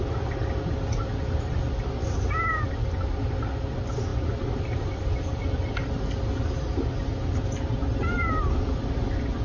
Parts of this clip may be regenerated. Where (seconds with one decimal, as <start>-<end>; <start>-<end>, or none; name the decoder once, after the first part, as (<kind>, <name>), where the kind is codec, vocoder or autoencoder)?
none